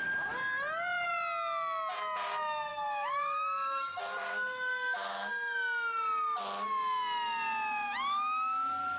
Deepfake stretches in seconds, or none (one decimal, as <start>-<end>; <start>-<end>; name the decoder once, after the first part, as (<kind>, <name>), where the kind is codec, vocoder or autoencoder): 2.7-5.3 (autoencoder, DAC-VAE)